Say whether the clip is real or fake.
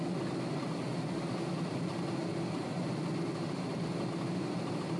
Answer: real